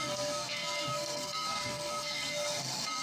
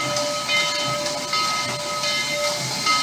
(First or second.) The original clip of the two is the second